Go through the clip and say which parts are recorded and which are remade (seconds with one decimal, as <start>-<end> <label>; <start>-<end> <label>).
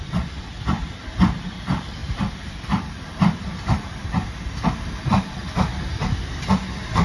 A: 0.0-5.4 remade; 5.4-6.4 recorded; 6.4-7.0 remade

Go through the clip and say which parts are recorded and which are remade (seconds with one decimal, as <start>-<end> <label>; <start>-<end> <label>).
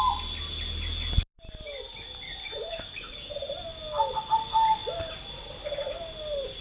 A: 0.0-2.4 recorded; 2.4-3.3 remade; 3.3-6.6 recorded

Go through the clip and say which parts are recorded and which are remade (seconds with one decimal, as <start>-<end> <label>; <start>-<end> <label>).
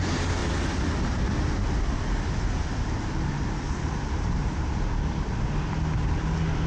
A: 0.0-6.7 recorded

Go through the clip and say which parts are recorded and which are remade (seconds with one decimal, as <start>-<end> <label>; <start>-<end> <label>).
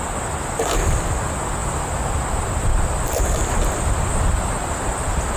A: 0.0-5.4 recorded